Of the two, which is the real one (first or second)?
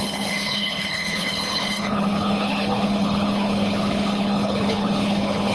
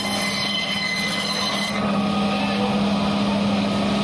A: second